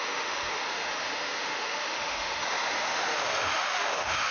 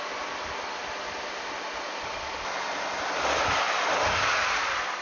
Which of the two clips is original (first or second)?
second